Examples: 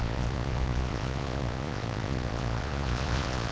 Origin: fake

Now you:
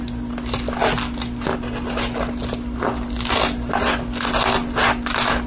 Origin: real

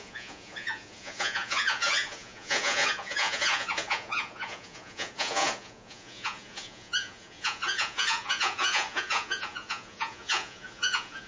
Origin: fake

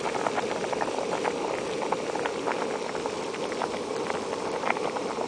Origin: real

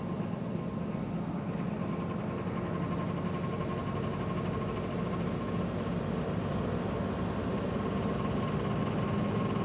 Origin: real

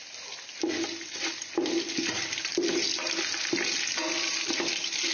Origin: real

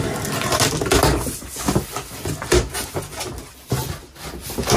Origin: real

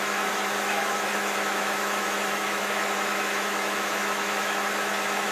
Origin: fake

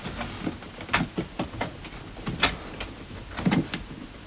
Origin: real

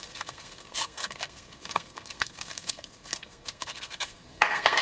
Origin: fake